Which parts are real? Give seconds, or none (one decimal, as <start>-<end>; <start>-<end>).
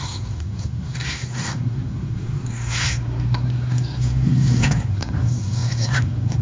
none